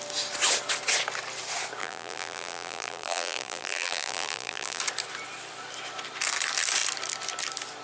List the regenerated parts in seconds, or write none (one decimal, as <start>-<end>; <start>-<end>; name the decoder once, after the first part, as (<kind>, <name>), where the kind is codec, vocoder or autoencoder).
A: 1.8-4.8 (vocoder, BigVGAN v2)